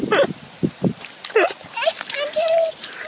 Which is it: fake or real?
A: real